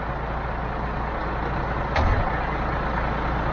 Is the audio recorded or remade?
recorded